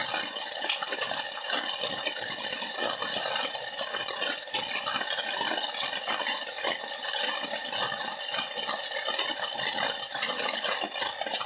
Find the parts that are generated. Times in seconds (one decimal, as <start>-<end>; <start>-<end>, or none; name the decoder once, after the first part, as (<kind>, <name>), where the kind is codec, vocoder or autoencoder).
3.0-4.0 (vocoder, BigVGAN v2)